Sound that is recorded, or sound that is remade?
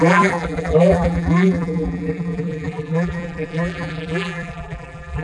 remade